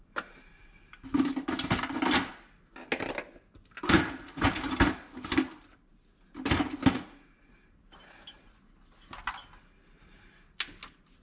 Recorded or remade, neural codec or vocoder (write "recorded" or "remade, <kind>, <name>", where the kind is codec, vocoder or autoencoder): recorded